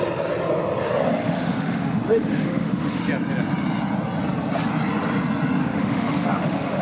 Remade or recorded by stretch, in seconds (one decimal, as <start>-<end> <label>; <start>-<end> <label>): 0.0-1.2 recorded; 1.2-3.0 remade; 3.0-5.6 recorded; 5.6-6.8 remade